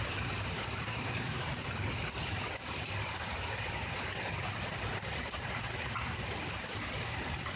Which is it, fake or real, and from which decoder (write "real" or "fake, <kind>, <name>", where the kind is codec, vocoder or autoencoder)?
real